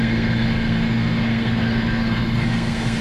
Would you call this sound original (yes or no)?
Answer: no